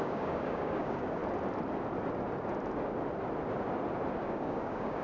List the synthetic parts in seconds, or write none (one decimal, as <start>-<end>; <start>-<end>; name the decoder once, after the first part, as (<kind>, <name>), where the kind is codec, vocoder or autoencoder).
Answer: 0.0-1.2 (codec, DAC); 4.2-5.0